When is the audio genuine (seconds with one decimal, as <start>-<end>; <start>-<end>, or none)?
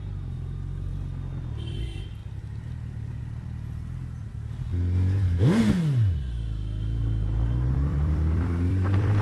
4.7-6.3